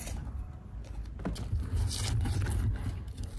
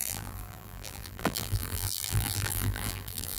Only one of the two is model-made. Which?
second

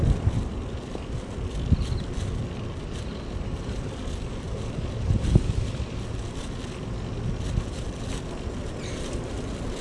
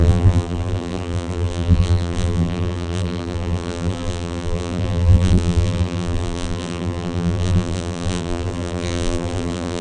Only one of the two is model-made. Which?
second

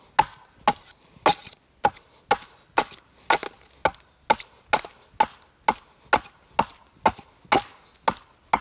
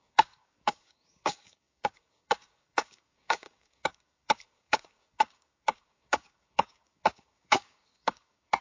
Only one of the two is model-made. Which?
second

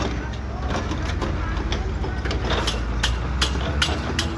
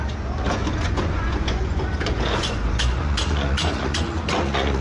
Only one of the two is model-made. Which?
second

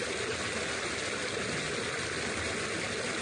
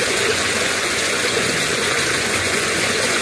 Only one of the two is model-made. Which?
second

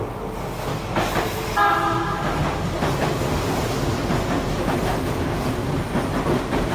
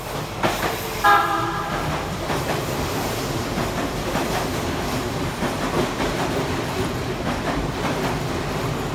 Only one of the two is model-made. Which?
second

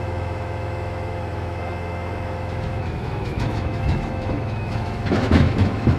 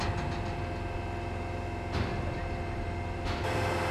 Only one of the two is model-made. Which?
first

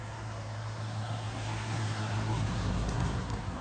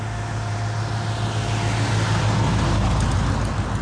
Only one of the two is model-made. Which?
first